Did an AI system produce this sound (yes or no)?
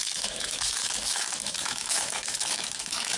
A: yes